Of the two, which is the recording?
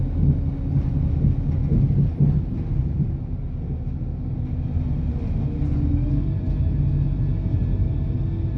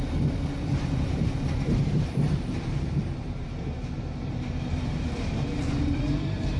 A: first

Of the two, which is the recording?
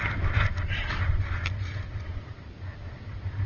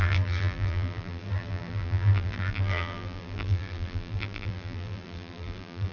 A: first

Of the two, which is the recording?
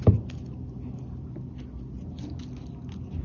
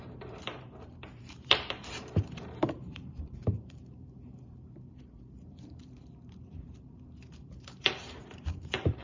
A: first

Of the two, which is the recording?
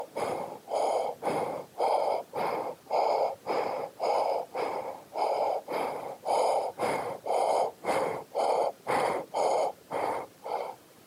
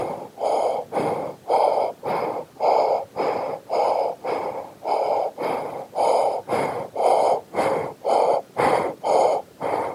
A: second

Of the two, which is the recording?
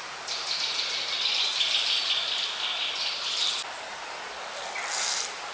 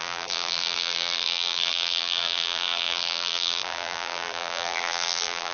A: first